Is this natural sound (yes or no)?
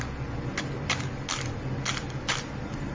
yes